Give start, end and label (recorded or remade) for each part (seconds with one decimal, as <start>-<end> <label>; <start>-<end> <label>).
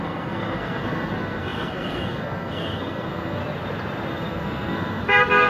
0.0-3.4 remade; 3.4-4.1 recorded; 4.1-5.5 remade